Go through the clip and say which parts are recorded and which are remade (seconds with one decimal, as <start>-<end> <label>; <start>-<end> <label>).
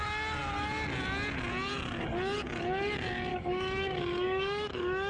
0.0-3.3 recorded; 3.3-5.1 remade